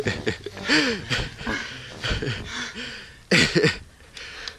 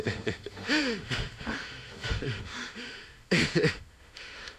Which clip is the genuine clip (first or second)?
first